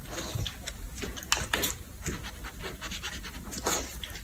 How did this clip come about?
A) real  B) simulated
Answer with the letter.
A